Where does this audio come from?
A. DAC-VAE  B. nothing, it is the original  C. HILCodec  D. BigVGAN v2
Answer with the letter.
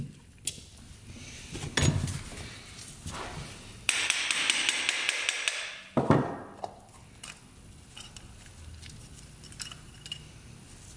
B